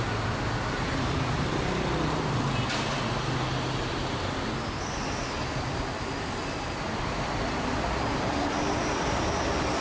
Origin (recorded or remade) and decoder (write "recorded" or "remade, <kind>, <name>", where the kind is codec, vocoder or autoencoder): recorded